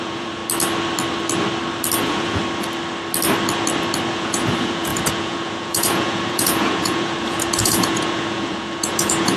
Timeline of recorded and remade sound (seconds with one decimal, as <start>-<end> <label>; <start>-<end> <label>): 0.0-0.4 remade; 0.4-2.0 recorded; 2.0-2.4 remade; 2.4-4.1 recorded; 4.1-9.4 remade